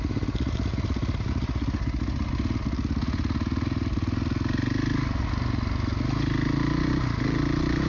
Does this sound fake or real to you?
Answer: real